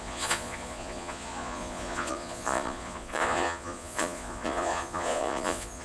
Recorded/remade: remade